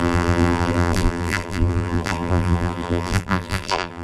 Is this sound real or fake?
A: fake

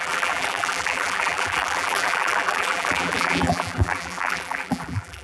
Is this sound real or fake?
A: fake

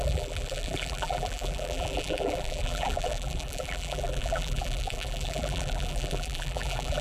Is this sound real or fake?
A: fake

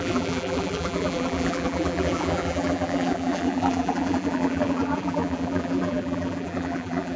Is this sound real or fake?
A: fake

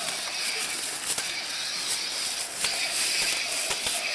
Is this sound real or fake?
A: real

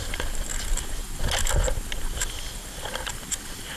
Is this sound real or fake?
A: real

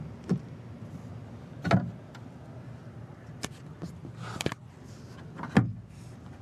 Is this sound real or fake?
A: real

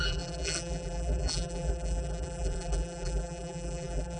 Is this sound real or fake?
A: fake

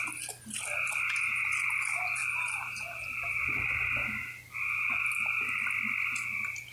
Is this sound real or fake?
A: real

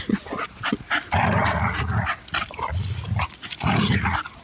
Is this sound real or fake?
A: real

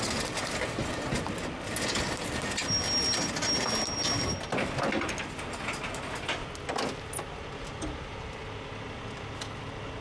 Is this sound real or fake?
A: real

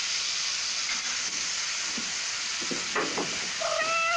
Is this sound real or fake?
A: real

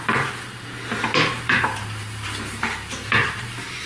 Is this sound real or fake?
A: fake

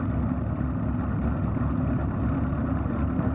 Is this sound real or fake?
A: real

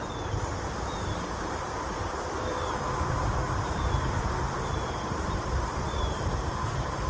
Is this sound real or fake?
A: fake